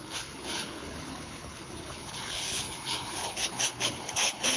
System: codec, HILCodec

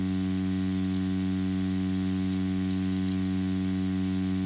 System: none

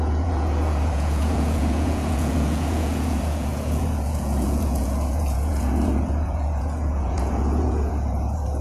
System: vocoder, Vocos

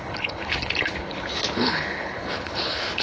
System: codec, HILCodec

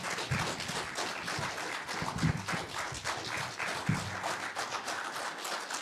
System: none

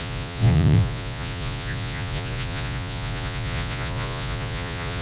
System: vocoder, Vocos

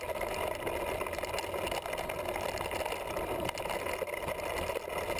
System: none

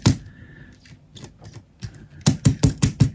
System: none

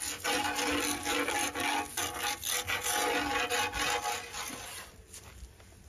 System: none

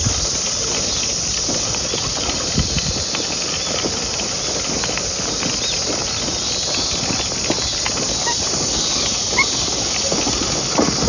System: none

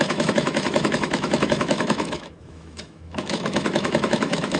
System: autoencoder, DAC-VAE